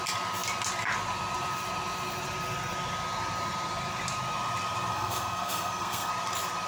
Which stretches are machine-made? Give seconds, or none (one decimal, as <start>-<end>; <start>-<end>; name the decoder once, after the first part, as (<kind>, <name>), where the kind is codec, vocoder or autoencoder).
4.9-6.1 (codec, SNAC)